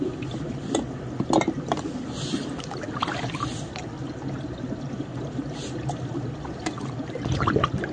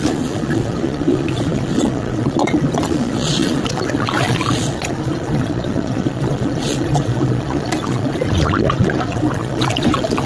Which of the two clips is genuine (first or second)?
first